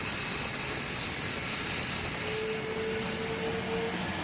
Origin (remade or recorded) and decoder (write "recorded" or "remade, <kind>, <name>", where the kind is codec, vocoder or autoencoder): recorded